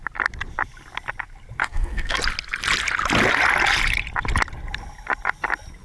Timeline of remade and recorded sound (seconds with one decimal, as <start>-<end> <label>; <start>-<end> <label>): 0.0-1.6 recorded; 1.6-2.2 remade; 2.2-5.8 recorded